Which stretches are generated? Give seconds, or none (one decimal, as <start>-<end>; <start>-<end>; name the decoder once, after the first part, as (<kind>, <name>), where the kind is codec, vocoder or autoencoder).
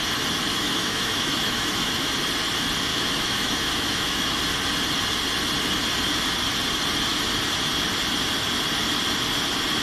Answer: 0.5-2.1 (autoencoder, DAC-VAE); 2.9-4.4